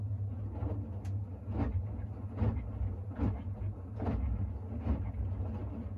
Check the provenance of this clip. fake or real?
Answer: real